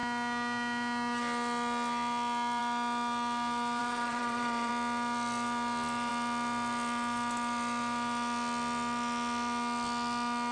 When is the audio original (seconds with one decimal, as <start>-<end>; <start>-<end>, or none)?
0.0-3.8; 4.7-10.5